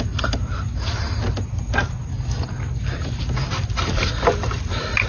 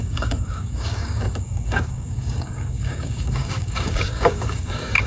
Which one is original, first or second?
first